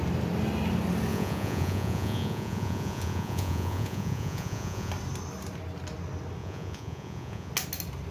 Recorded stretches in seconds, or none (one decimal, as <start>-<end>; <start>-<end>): 0.0-1.1; 4.9-6.4; 7.5-8.1